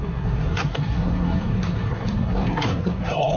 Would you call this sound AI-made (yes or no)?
yes